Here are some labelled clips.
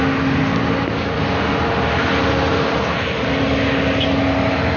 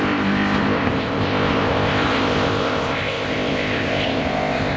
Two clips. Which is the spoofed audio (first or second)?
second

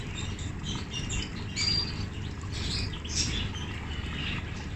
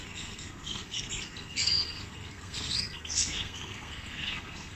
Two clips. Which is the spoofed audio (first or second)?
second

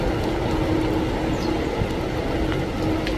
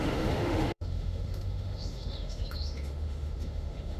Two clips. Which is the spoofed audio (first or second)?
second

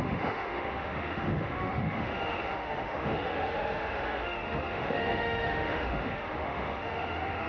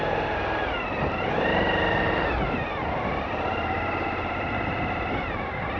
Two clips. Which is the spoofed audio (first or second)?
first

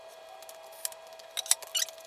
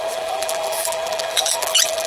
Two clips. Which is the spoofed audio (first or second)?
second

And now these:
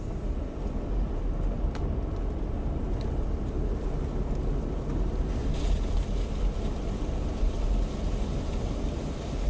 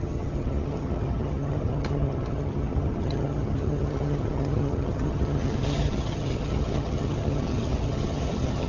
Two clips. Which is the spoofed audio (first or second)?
second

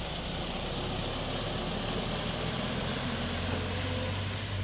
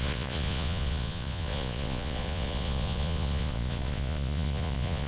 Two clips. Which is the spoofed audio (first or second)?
second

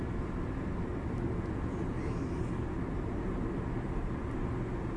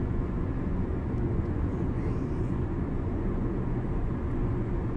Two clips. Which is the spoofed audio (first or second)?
second